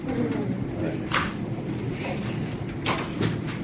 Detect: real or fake real